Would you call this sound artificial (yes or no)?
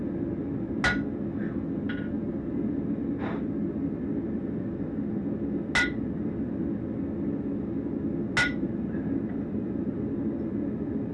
no